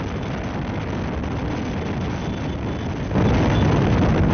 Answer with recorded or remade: recorded